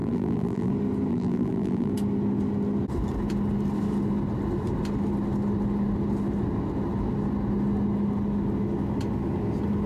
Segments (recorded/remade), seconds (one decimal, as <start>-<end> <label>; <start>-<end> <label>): 0.0-0.7 remade; 0.7-1.1 recorded; 1.1-1.9 remade; 1.9-9.9 recorded